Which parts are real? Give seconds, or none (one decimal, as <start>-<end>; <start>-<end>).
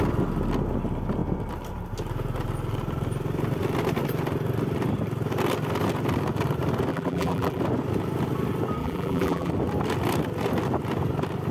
0.0-6.9; 7.6-8.8; 9.5-11.5